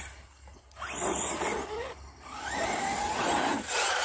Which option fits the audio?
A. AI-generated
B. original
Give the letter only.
B